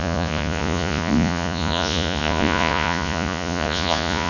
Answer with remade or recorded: remade